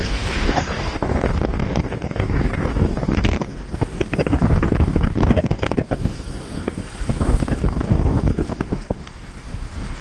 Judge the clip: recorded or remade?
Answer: remade